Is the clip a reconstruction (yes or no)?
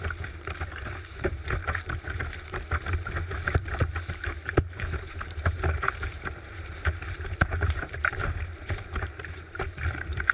yes